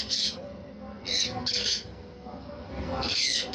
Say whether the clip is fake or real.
fake